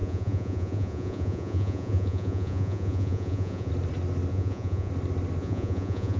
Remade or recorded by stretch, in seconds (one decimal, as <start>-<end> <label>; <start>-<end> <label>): 0.0-3.7 remade; 3.7-4.3 recorded; 4.3-4.9 remade; 4.9-5.4 recorded; 5.4-6.2 remade